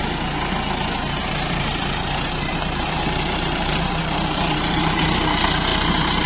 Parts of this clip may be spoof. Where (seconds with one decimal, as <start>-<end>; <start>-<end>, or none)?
1.2-5.0; 5.7-6.3